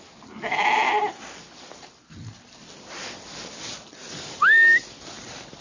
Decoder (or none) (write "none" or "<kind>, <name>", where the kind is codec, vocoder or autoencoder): none